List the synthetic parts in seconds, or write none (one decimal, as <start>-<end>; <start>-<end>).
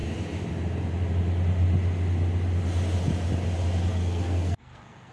3.9-5.1